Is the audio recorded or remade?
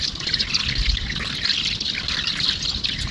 recorded